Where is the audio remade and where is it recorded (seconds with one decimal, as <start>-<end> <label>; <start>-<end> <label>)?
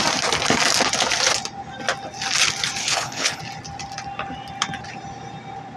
0.0-2.8 recorded; 2.8-3.4 remade; 3.4-5.8 recorded